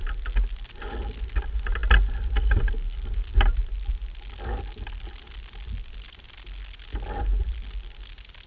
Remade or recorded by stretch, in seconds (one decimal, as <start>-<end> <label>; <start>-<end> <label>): 0.0-8.5 recorded